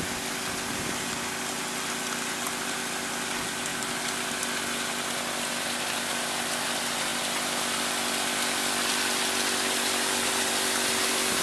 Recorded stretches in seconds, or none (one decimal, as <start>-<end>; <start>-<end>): 0.0-11.4